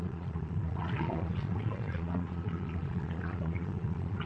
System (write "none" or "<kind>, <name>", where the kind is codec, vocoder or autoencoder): vocoder, Vocos